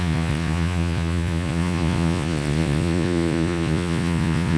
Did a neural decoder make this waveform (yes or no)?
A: yes